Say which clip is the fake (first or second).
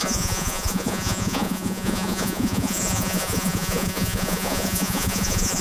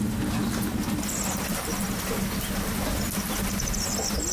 first